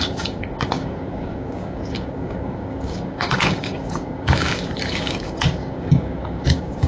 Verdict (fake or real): fake